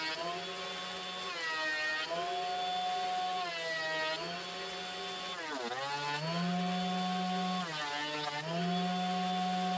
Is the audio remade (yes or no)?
no